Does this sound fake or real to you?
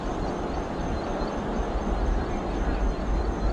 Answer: real